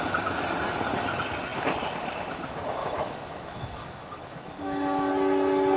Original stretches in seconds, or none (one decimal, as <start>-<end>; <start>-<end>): 0.0-2.8; 5.1-5.8